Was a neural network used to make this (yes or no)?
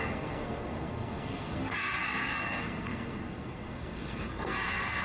yes